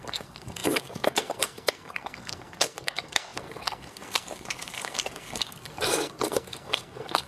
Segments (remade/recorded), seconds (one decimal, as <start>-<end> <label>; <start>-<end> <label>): 0.0-7.3 remade

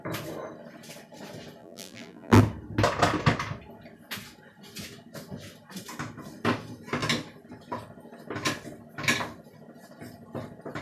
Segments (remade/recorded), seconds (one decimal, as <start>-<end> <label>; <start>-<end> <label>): 0.0-1.6 recorded; 1.6-2.4 remade; 2.4-10.8 recorded

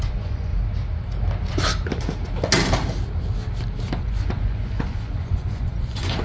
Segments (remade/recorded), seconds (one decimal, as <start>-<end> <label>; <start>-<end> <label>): 0.0-0.5 remade; 0.5-4.0 recorded; 4.0-6.2 remade

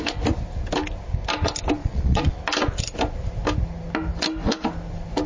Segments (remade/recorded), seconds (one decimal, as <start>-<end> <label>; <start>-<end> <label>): 0.0-1.8 recorded; 1.8-2.3 remade; 2.3-5.3 recorded

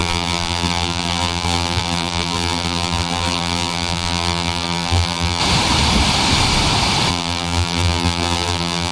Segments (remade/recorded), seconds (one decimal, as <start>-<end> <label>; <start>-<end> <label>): 0.0-5.4 remade; 5.4-7.1 recorded; 7.1-8.9 remade